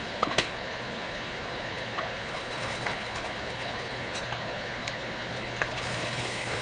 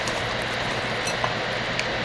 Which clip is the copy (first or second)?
first